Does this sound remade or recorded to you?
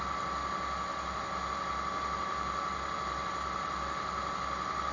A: recorded